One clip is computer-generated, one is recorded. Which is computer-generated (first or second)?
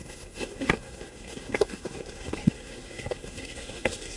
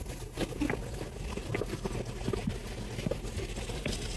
first